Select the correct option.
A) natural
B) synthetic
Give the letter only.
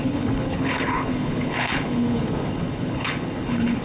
B